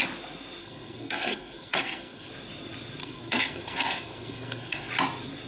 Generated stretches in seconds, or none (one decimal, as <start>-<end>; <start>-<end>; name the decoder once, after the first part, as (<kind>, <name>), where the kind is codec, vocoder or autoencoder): 0.6-2.3 (codec, SNAC); 3.0-4.9

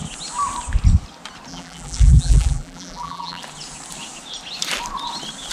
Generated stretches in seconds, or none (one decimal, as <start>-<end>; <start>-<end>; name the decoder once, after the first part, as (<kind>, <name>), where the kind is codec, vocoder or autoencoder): 1.5-3.4 (vocoder, BigVGAN v2)

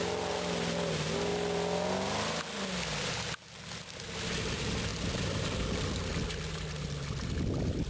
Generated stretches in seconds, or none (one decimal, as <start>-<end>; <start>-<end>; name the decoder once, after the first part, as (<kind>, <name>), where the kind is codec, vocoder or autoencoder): none

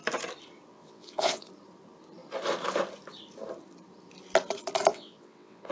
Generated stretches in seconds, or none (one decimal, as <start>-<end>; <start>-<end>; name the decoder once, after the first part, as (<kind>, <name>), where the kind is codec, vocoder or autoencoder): 0.7-1.5 (vocoder, WaveNeXt); 4.9-5.7

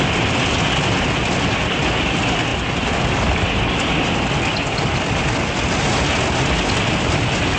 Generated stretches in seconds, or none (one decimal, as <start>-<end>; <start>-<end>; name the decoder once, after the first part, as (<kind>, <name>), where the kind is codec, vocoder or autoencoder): none

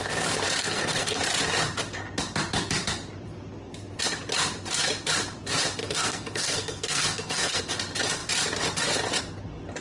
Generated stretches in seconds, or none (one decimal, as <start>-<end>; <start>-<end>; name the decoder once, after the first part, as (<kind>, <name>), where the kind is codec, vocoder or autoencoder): 0.6-1.2 (codec, SNAC); 5.8-7.6

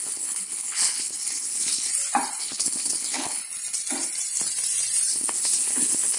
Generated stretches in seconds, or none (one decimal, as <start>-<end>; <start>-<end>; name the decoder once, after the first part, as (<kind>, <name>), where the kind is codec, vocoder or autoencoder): 0.0-1.9 (codec, HILCodec); 2.4-3.4; 5.1-6.2